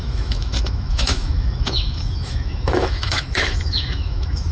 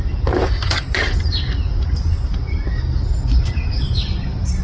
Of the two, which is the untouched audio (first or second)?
second